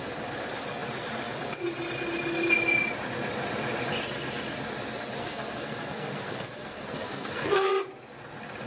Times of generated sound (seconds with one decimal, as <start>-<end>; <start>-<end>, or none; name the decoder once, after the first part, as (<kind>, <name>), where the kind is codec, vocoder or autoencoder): 5.2-7.7 (codec, SNAC)